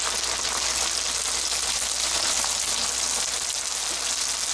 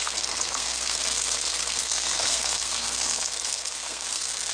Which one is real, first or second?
first